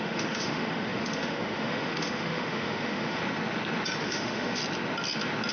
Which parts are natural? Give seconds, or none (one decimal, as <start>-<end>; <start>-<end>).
3.2-4.0; 4.6-5.5

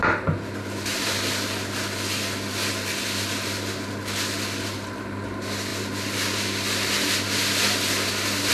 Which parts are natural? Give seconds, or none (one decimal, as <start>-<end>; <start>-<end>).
0.0-8.5

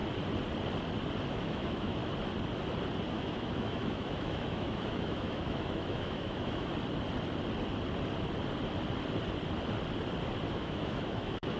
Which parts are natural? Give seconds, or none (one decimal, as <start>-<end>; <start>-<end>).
0.0-1.3; 2.0-3.1; 6.7-10.5

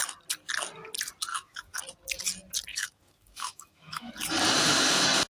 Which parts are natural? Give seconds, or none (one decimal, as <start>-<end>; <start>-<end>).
0.0-1.3; 1.8-2.7; 4.1-5.3

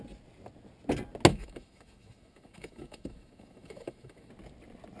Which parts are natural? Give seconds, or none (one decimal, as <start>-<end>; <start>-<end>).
0.0-1.3; 4.3-5.0